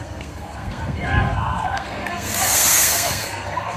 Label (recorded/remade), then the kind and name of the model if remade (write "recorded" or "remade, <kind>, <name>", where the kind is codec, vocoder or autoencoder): remade, codec, SNAC